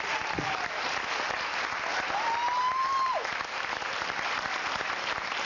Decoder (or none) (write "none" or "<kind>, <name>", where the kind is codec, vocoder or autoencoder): none